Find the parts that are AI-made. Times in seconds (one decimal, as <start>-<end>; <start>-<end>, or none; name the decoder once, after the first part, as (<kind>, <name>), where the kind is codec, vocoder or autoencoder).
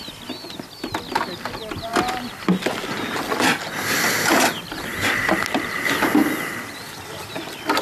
none